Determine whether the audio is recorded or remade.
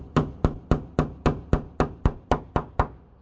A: recorded